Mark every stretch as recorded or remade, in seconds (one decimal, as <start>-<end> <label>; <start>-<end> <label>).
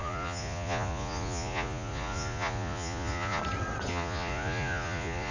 0.0-3.4 remade; 3.4-3.9 recorded; 3.9-5.3 remade